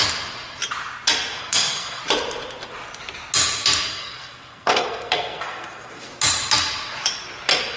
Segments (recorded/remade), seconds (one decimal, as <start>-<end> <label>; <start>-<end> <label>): 0.0-1.4 recorded; 1.4-2.0 remade; 2.0-3.9 recorded; 3.9-6.1 remade; 6.1-7.8 recorded